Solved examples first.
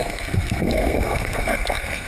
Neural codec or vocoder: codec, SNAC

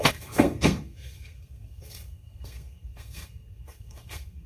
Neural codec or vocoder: codec, SNAC